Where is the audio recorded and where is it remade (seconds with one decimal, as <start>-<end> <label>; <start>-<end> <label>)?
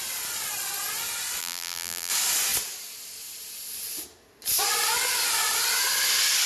0.0-1.4 recorded; 1.4-2.1 remade; 2.1-6.5 recorded